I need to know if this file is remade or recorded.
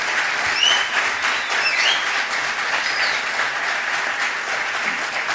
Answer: recorded